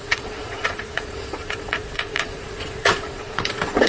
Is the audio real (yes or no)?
no